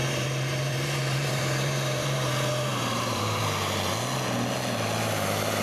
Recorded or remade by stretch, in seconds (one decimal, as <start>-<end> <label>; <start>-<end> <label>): 0.0-3.4 remade; 3.4-5.6 recorded